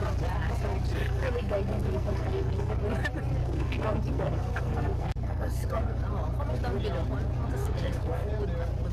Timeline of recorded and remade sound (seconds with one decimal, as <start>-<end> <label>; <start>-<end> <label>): 0.0-1.0 recorded; 1.0-2.7 remade; 2.7-3.4 recorded; 3.4-6.0 remade; 6.0-7.6 recorded; 7.6-8.3 remade; 8.3-8.9 recorded